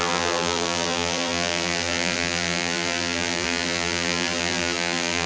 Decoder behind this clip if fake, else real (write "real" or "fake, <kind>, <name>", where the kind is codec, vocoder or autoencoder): fake, vocoder, BigVGAN v2